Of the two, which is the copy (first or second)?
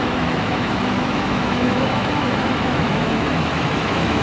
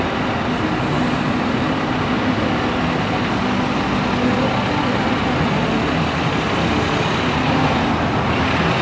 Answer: first